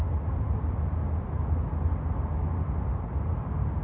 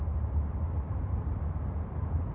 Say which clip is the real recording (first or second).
first